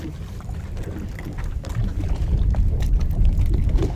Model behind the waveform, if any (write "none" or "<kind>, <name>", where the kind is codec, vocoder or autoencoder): none